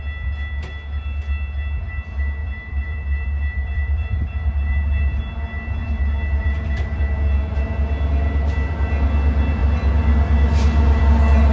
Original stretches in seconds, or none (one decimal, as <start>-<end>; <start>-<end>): 0.0-2.4; 5.2-5.8; 7.0-11.5